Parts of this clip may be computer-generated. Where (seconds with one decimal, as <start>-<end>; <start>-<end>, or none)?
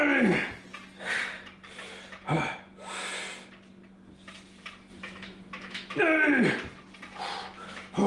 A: 4.9-6.0; 7.4-8.1